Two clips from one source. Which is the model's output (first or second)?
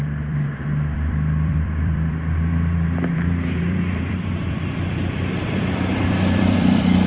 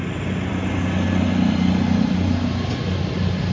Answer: first